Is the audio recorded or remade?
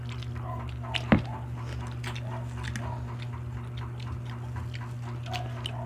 recorded